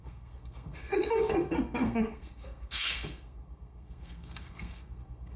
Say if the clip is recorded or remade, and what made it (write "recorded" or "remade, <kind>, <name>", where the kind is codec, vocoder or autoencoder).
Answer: remade, codec, SNAC